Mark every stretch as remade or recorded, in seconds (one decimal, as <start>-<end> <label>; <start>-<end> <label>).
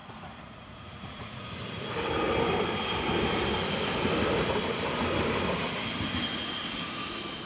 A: 0.0-1.4 remade; 1.4-7.5 recorded